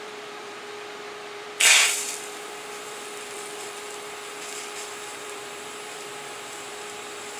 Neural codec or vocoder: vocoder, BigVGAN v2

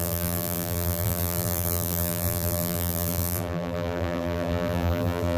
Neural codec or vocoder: vocoder, BigVGAN v2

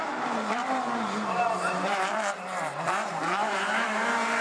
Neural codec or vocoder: vocoder, BigVGAN v2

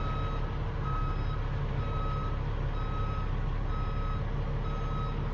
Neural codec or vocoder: none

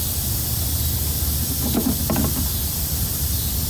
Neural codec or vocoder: none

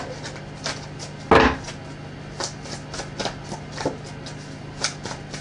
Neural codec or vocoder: none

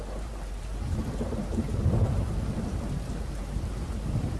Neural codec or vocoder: vocoder, BigVGAN v2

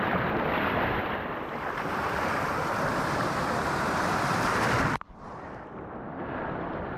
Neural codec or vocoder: vocoder, BigVGAN v2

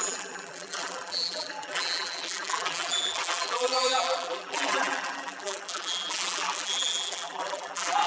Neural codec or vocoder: vocoder, BigVGAN v2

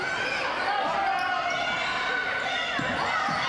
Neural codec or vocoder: none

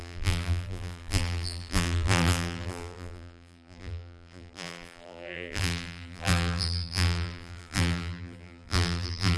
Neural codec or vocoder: vocoder, BigVGAN v2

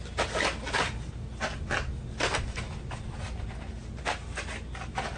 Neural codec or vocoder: none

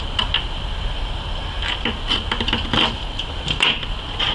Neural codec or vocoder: none